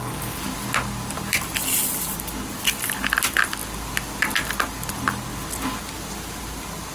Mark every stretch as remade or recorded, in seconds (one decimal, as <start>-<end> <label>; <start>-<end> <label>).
0.0-6.9 recorded